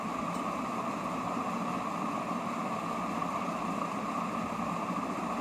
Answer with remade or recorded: recorded